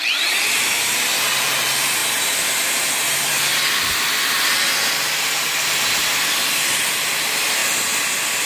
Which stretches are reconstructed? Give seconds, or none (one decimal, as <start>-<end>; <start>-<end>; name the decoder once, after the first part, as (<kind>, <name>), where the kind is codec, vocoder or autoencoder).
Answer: 0.0-2.0 (vocoder, BigVGAN v2); 6.5-7.6